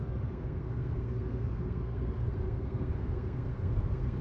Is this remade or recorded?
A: remade